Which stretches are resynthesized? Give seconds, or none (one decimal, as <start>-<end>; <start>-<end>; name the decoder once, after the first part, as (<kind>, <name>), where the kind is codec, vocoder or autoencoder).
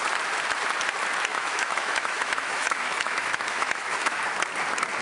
1.3-4.2 (autoencoder, DAC-VAE)